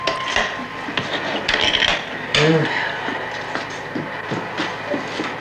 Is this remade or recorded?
recorded